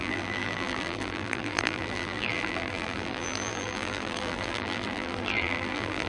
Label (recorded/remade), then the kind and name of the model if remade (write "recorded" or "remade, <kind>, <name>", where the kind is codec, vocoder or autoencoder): remade, vocoder, BigVGAN v2